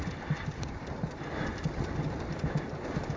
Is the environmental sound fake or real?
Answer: real